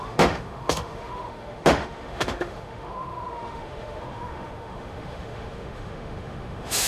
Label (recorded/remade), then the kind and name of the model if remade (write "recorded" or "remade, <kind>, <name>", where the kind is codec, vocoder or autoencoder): remade, autoencoder, DAC-VAE